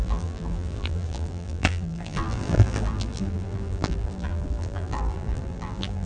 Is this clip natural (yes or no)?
no